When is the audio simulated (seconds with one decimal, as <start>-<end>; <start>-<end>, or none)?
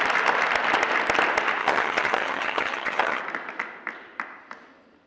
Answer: 1.6-3.2